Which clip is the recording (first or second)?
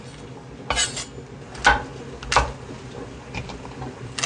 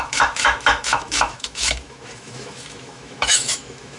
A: first